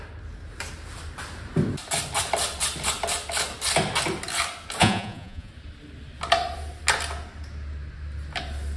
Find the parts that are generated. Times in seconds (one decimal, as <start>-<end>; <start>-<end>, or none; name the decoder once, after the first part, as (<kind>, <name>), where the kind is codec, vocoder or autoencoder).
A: 4.8-5.5 (vocoder, Vocos)